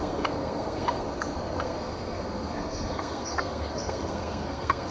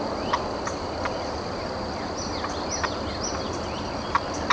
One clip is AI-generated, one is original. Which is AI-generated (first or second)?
first